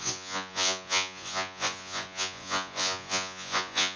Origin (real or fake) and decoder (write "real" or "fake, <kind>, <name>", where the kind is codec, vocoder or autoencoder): fake, vocoder, Vocos